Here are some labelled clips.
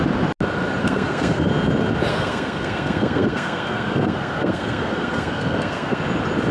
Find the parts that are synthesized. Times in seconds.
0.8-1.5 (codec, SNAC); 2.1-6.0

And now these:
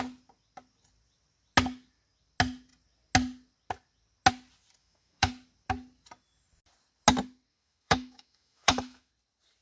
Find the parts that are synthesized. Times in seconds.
4.8-5.3 (autoencoder, DAC-VAE); 7.5-9.1

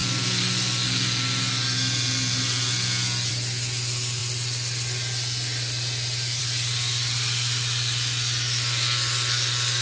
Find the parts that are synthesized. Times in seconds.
none